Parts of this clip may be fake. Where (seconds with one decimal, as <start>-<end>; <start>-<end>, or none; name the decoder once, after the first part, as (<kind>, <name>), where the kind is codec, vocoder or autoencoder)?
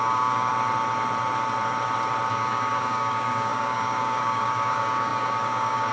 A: 0.0-0.5 (codec, DAC); 2.3-5.9